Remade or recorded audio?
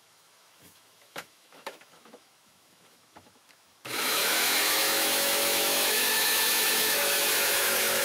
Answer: remade